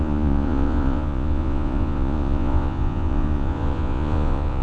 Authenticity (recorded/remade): remade